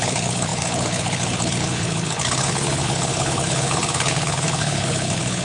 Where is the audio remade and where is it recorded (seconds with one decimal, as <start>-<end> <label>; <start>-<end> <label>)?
0.0-5.4 remade